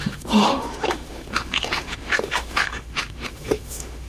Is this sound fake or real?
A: fake